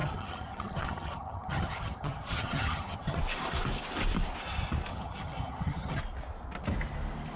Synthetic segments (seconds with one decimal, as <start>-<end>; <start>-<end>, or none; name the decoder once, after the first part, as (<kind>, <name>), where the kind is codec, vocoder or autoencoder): 0.0-3.2 (vocoder, HiFi-GAN); 4.9-6.0